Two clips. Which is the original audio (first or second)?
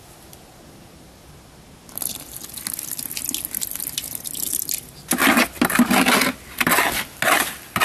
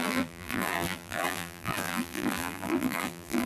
first